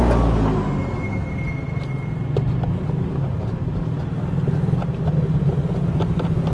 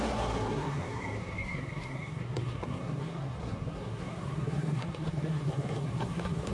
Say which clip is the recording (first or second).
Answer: first